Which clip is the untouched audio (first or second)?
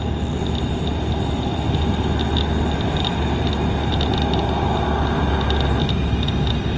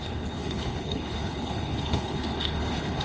first